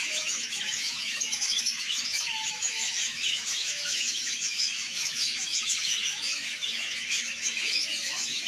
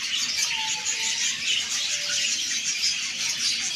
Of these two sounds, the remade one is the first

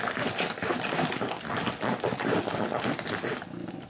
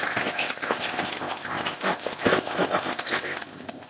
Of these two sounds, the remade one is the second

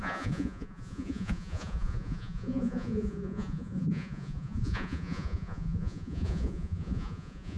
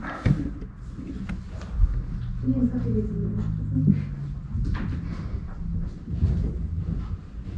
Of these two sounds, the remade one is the first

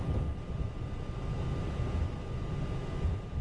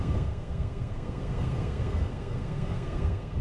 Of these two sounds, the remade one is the second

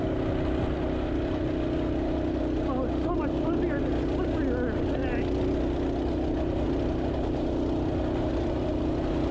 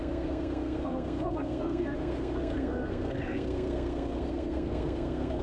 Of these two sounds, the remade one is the second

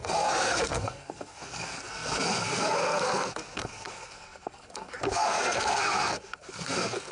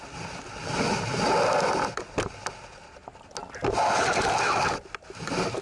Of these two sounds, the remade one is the first